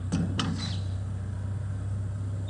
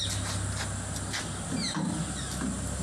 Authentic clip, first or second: second